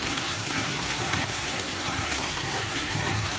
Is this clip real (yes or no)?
no